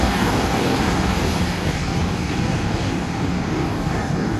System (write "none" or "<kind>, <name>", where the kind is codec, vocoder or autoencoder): codec, DAC